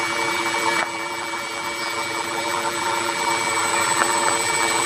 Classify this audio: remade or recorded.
remade